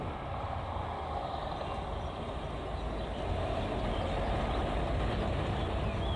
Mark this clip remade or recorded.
recorded